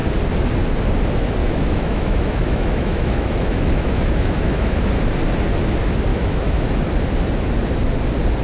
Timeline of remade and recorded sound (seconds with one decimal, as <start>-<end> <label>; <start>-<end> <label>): 0.0-1.4 recorded; 1.4-4.9 remade; 4.9-6.1 recorded; 6.1-6.7 remade; 6.7-8.4 recorded